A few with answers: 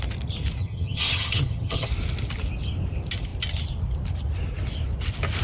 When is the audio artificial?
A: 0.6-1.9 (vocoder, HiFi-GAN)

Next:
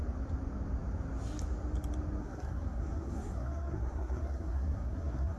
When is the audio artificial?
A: 2.2-5.4 (codec, SNAC)

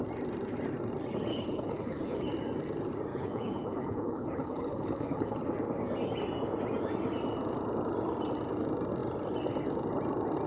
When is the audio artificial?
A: 1.3-2.2 (codec, HILCodec); 3.1-5.4

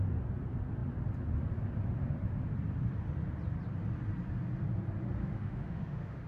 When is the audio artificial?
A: 5.2-6.3 (autoencoder, DAC-VAE)

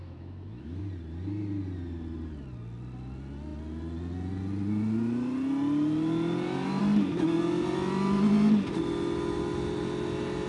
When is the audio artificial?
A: 0.0-0.8 (autoencoder, DAC-VAE)

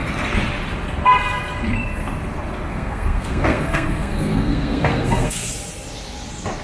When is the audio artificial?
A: 2.7-5.5 (codec, SNAC)